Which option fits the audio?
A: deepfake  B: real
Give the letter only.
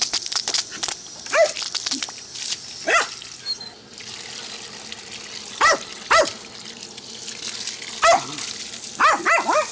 B